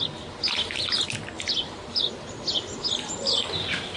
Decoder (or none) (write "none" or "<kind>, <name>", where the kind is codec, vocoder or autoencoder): none